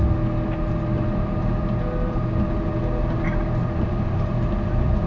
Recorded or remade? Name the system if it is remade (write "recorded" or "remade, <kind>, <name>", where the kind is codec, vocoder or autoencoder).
recorded